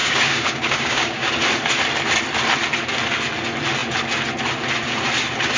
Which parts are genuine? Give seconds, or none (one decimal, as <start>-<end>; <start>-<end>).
1.3-5.6